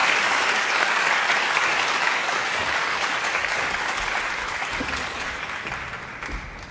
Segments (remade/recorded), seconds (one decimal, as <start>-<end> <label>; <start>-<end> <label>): 0.0-4.0 remade; 4.0-4.4 recorded; 4.4-5.5 remade; 5.5-6.7 recorded